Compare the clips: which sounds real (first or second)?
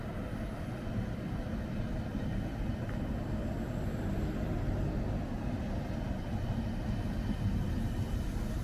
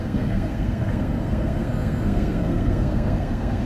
first